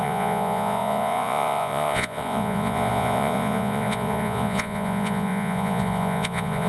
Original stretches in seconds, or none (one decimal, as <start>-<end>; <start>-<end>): none